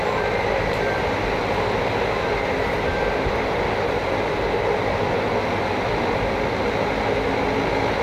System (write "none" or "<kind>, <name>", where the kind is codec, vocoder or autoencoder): none